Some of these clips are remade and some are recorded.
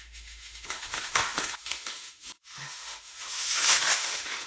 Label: remade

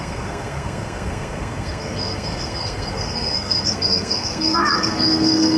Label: remade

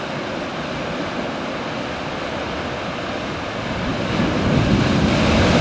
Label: recorded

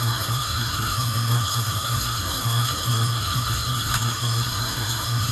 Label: remade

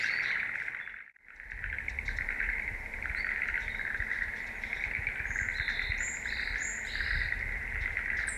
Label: recorded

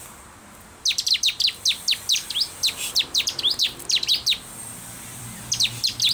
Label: remade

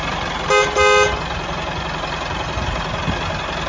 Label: recorded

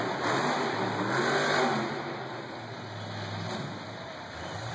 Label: recorded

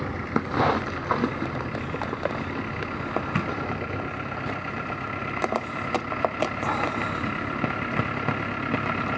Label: recorded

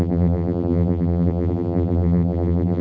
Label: remade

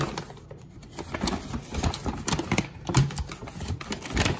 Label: recorded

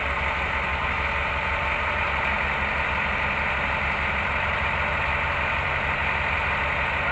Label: recorded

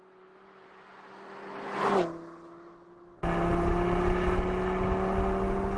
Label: recorded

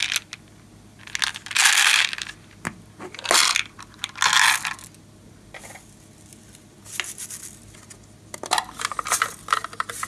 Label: recorded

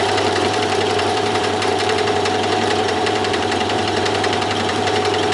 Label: remade